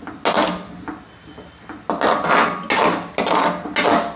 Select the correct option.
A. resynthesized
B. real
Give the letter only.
B